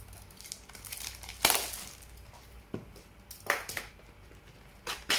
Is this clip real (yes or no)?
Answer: yes